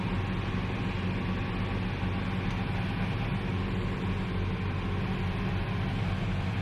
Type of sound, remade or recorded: recorded